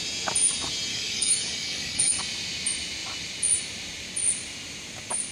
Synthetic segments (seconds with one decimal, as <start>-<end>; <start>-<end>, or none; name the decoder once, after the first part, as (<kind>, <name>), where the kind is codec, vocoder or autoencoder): 0.9-2.2 (codec, DAC)